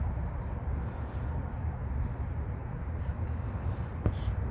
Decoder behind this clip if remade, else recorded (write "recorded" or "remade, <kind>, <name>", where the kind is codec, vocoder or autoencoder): recorded